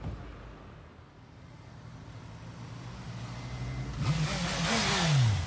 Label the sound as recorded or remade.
recorded